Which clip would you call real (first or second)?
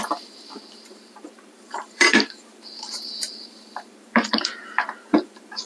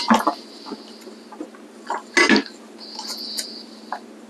second